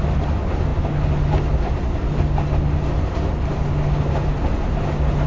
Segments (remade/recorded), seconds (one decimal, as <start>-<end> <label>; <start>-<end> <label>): 0.0-5.3 recorded